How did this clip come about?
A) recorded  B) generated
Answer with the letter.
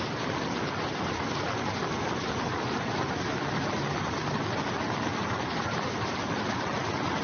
A